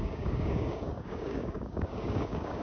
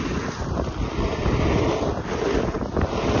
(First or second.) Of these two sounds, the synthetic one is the first